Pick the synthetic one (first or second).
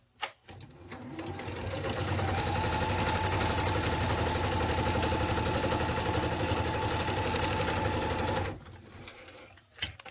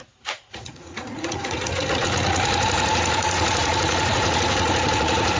second